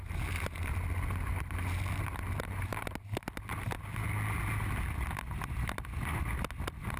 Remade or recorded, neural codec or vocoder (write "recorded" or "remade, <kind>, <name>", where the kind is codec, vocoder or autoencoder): recorded